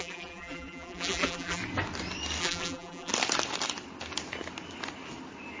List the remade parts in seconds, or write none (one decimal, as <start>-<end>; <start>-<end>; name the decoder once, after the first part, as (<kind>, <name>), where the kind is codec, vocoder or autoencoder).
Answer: 0.0-1.6 (vocoder, BigVGAN v2); 2.4-3.1